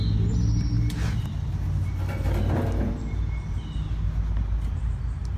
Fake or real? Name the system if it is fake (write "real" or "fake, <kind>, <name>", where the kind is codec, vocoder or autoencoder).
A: real